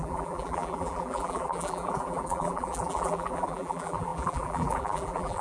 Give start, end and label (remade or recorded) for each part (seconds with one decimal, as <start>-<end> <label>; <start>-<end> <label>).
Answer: 0.0-5.4 remade